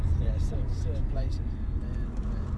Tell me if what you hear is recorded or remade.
recorded